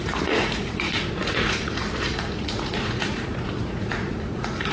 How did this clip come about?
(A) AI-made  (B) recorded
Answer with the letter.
A